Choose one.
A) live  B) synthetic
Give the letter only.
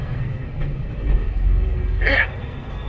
B